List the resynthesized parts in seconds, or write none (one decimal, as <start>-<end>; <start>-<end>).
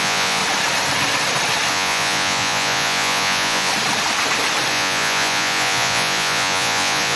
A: 0.0-0.4; 1.7-3.7; 4.7-7.2